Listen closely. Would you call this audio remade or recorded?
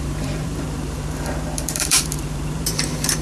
remade